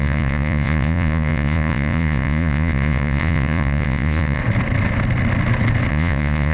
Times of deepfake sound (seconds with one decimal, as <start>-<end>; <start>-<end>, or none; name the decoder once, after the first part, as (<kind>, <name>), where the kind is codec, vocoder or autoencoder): 0.0-4.4 (vocoder, Vocos); 5.9-6.5

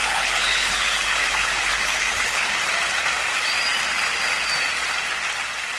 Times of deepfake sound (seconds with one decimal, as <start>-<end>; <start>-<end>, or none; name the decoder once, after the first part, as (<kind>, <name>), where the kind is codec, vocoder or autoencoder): 0.0-2.5 (codec, HILCodec)

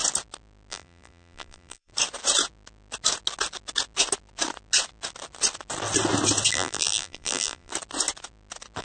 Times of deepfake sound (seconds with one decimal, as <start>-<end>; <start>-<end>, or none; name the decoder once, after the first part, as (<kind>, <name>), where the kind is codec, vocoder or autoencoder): 0.7-1.9 (vocoder, BigVGAN v2); 6.5-7.7

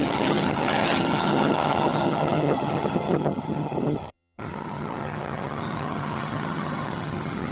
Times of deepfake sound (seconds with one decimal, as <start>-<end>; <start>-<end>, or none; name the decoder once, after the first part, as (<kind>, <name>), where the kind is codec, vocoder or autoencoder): 0.0-7.5 (vocoder, HiFi-GAN)

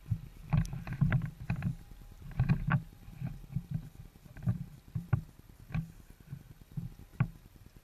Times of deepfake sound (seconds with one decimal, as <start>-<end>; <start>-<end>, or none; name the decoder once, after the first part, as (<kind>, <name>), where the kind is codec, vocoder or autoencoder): 0.4-2.5 (vocoder, BigVGAN v2); 4.5-5.7; 7.1-7.8